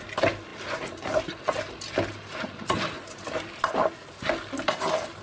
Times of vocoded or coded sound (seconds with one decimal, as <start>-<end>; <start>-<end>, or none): none